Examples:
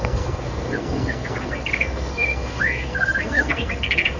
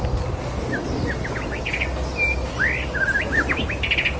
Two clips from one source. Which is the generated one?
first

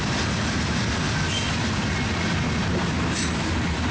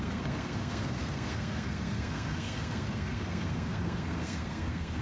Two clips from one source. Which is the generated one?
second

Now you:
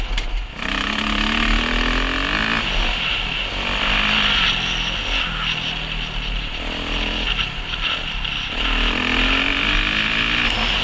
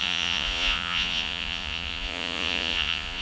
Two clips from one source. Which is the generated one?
second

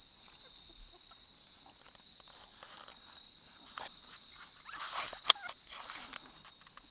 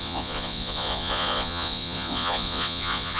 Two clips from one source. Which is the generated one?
second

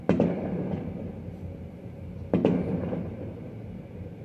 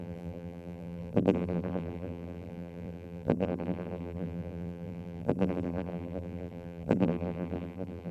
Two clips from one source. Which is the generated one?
second